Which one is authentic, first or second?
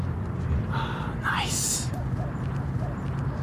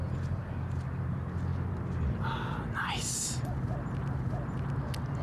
second